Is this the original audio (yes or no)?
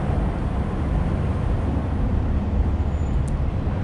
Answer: yes